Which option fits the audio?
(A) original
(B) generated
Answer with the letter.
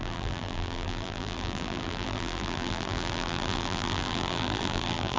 B